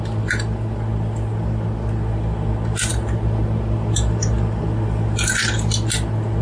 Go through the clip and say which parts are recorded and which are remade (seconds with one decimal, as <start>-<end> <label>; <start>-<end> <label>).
0.0-6.4 recorded